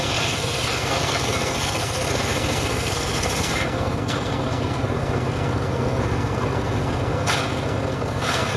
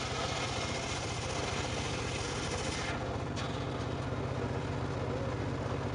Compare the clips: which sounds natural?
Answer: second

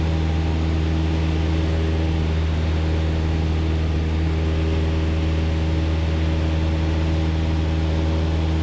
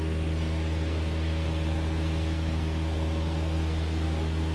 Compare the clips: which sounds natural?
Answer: first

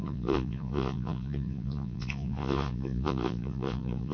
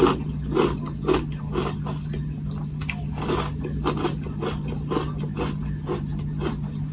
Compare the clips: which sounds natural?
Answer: second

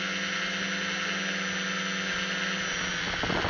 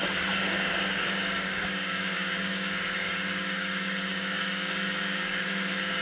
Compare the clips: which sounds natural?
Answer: first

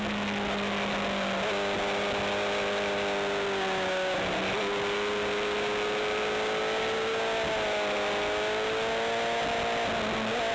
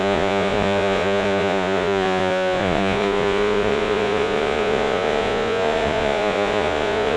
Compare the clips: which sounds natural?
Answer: first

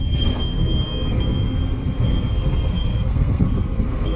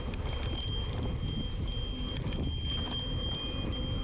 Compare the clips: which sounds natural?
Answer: second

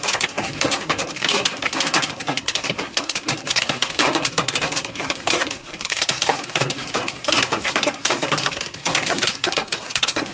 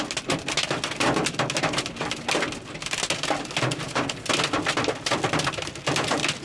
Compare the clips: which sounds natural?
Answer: second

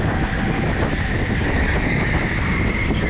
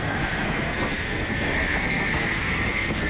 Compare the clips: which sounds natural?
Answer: first